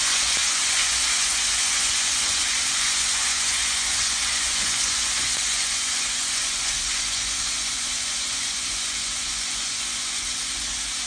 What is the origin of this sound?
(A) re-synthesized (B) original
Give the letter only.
A